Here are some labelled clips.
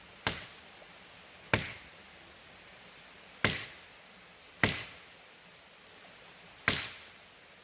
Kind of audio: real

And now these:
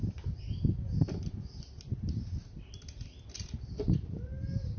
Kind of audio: real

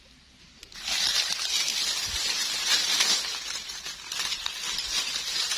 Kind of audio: real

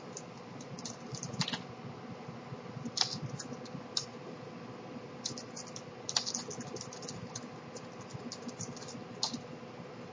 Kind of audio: real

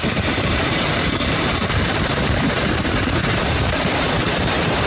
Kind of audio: fake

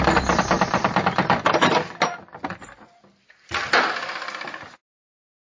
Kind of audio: real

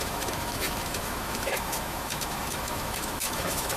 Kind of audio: fake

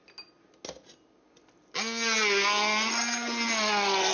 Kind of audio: real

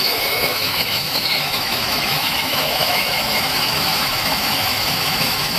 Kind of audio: fake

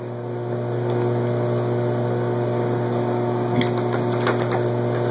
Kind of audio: real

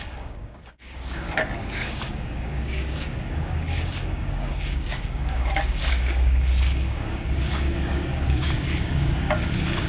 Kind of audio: fake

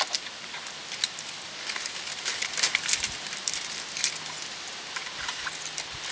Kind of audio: real